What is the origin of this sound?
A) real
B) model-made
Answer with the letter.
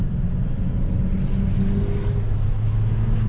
A